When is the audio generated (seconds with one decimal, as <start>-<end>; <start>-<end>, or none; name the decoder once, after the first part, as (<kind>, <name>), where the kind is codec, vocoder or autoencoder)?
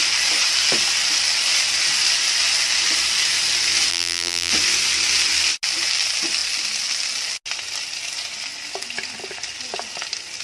3.9-4.5 (vocoder, BigVGAN v2)